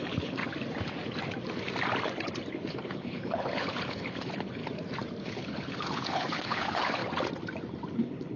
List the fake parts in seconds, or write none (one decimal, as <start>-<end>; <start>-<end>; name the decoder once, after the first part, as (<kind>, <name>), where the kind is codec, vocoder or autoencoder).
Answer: 0.0-0.4 (codec, HILCodec); 2.5-4.6; 5.2-7.0; 7.9-8.4